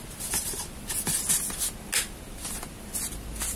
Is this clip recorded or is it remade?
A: recorded